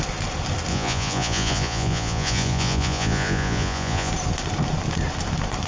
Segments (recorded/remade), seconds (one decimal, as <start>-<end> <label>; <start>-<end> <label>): 0.0-0.7 recorded; 0.7-4.1 remade; 4.1-5.7 recorded